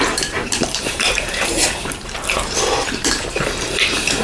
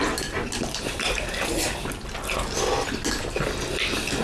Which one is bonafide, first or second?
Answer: second